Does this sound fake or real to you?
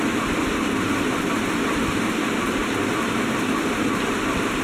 real